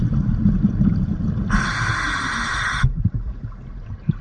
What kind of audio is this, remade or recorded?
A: recorded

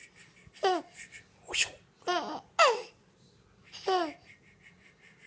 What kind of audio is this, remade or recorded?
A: recorded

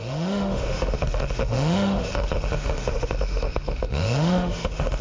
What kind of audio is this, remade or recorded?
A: remade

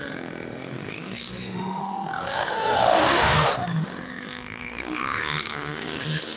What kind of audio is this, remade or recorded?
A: remade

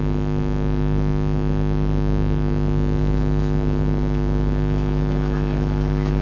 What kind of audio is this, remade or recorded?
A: remade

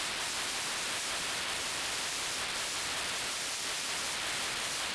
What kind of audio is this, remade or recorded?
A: recorded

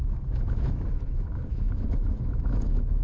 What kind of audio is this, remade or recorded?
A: remade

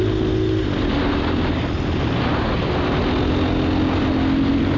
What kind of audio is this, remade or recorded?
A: recorded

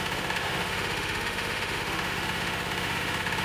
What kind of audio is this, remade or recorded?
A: remade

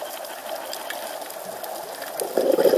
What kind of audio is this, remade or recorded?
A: recorded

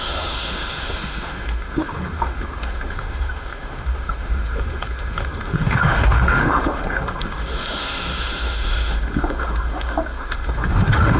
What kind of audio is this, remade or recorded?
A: remade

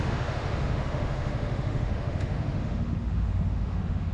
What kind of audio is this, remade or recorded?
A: remade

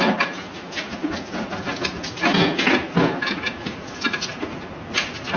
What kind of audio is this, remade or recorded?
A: recorded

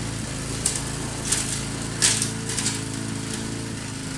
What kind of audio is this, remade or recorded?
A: recorded